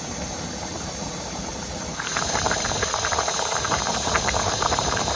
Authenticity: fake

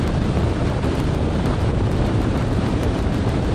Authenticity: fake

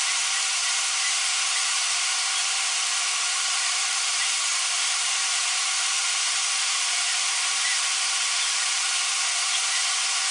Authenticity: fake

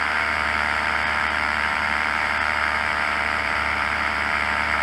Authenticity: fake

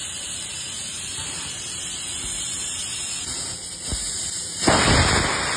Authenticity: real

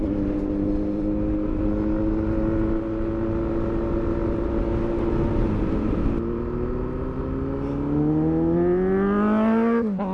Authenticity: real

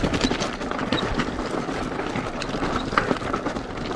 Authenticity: real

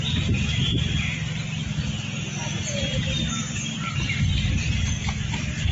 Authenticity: real